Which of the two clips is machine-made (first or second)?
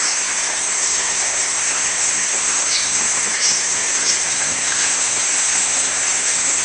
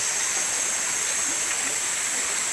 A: first